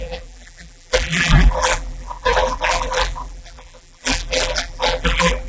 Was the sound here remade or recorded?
remade